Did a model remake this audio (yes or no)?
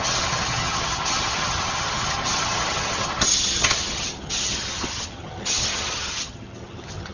yes